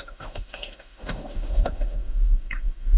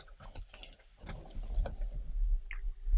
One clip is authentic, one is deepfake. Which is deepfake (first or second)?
first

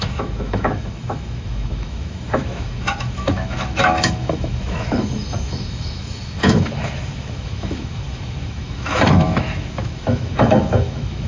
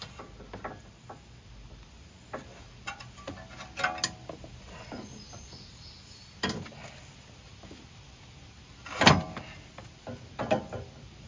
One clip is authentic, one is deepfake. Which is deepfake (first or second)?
first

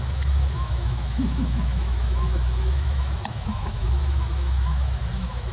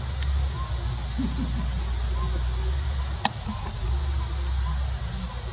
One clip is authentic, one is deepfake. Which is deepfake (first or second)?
first